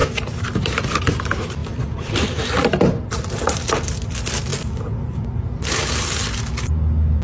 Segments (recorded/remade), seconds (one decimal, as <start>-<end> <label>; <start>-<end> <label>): 0.0-1.6 recorded; 1.6-3.2 remade; 3.2-7.2 recorded